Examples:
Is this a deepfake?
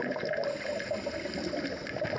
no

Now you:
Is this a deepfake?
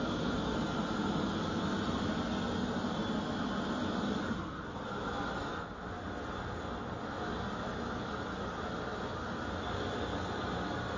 no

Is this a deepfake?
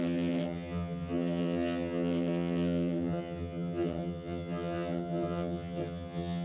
yes